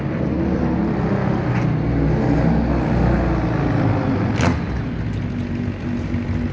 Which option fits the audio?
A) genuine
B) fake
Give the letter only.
A